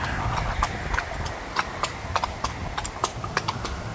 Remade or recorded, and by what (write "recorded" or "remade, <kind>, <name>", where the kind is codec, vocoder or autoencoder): recorded